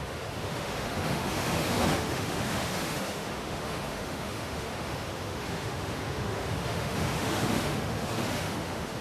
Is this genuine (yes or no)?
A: no